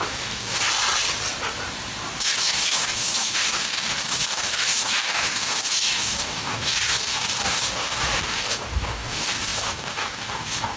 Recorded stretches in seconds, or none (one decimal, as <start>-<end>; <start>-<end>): 0.6-2.2